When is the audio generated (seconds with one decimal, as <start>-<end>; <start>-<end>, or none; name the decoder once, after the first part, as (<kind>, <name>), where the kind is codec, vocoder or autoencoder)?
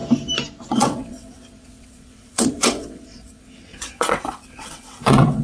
0.7-5.4 (vocoder, WaveNeXt)